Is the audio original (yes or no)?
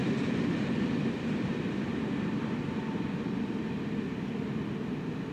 no